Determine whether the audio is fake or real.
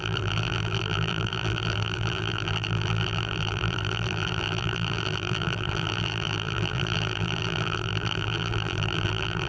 fake